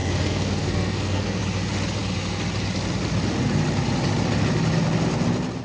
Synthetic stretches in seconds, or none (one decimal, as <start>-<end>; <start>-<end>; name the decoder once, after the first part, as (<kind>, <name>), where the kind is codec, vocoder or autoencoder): 0.0-1.4 (codec, SNAC)